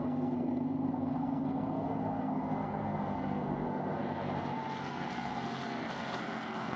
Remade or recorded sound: remade